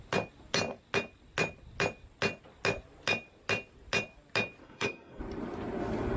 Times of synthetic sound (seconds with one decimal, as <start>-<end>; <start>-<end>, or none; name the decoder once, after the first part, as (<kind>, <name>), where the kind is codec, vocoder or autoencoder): 4.6-5.2 (codec, SNAC)